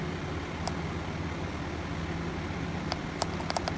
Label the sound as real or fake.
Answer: real